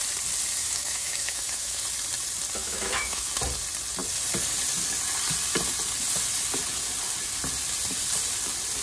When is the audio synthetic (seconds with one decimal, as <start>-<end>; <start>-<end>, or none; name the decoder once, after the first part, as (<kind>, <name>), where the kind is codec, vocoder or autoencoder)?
0.6-1.8 (autoencoder, DAC-VAE); 2.6-3.3